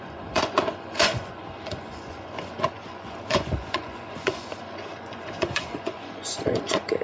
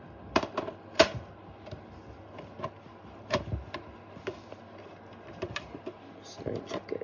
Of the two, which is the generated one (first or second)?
first